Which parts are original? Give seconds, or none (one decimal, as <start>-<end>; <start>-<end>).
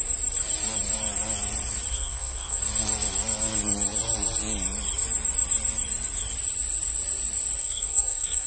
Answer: 0.0-1.9; 2.6-7.6